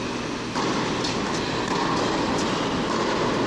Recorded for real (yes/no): yes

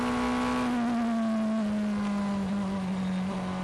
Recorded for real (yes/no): yes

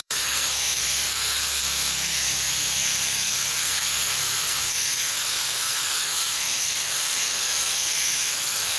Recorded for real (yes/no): no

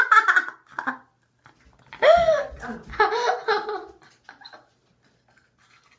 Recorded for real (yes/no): yes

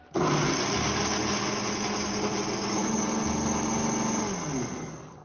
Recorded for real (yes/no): yes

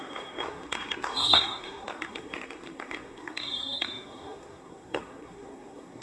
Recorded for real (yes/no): no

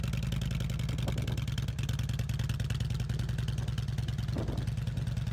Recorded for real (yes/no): yes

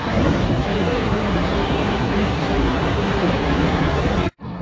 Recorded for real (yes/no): no